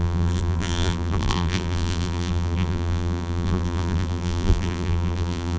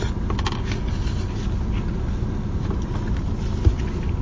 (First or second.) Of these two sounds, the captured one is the second